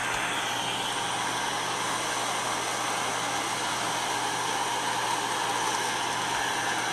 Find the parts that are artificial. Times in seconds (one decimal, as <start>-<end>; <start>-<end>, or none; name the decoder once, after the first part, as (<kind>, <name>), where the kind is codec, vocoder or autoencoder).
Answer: none